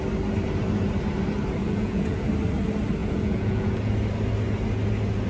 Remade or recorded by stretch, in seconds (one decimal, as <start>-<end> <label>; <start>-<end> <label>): 0.0-1.6 recorded; 1.6-2.3 remade; 2.3-3.0 recorded; 3.0-3.9 remade; 3.9-5.3 recorded